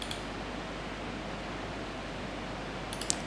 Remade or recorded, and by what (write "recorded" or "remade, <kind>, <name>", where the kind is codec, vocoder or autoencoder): recorded